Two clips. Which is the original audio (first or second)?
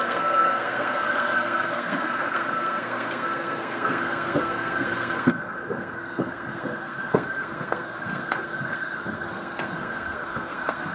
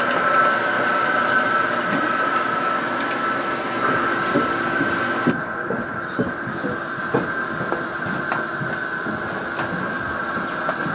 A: second